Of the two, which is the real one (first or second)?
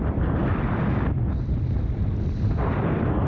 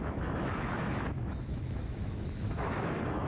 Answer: first